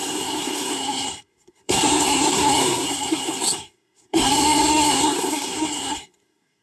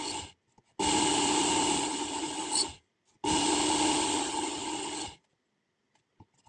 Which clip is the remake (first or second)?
first